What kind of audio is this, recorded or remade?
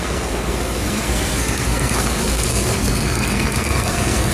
remade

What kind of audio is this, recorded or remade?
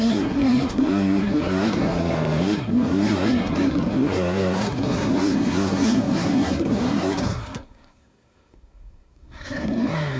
remade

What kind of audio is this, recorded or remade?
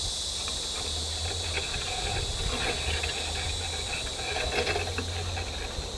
recorded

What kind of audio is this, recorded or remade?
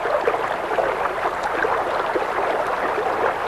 recorded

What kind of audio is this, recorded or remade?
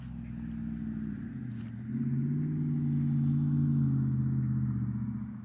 recorded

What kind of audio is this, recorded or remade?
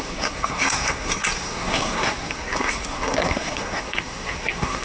remade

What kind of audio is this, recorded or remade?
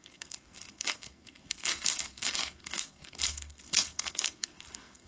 remade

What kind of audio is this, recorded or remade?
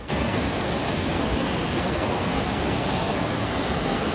remade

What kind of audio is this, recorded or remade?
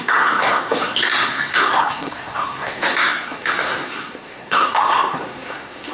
remade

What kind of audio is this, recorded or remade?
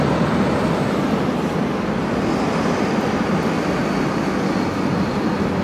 recorded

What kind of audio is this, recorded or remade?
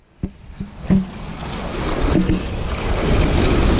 recorded